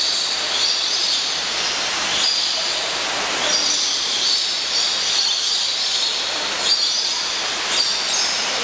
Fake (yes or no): yes